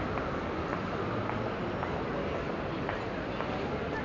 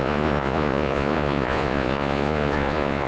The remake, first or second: second